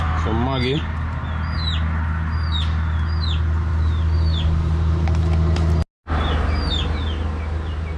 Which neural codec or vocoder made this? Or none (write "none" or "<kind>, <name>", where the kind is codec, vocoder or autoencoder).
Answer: none